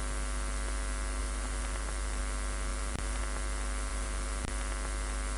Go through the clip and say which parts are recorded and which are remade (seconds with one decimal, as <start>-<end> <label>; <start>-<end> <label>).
0.0-1.2 recorded; 1.2-2.2 remade; 2.2-2.7 recorded; 2.7-3.2 remade; 3.2-3.9 recorded; 3.9-4.5 remade; 4.5-5.4 recorded

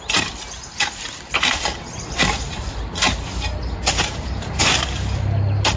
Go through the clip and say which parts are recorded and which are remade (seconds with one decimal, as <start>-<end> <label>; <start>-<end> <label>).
0.0-5.8 recorded